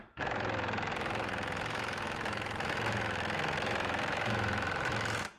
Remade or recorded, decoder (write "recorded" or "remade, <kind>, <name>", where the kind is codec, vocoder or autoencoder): remade, autoencoder, DAC-VAE